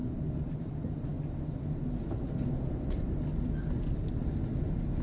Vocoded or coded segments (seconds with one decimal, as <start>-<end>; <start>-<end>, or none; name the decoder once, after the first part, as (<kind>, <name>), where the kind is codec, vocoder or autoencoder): none